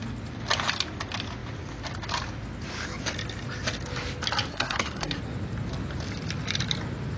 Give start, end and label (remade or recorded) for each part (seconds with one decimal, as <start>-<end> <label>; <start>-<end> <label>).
0.0-4.5 recorded; 4.5-5.2 remade; 5.2-7.2 recorded